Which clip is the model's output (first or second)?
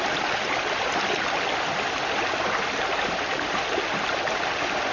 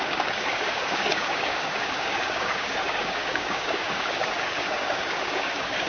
second